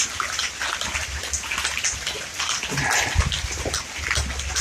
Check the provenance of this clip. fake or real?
real